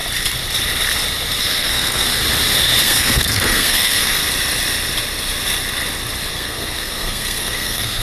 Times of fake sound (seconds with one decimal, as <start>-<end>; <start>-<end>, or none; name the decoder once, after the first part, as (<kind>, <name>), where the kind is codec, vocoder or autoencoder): 1.4-2.2 (codec, SNAC); 2.8-4.2; 6.3-8.0